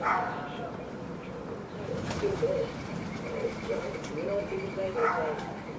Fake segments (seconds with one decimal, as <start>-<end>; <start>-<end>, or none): 1.1-4.4